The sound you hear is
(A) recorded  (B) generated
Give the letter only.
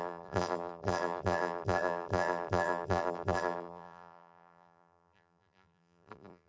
B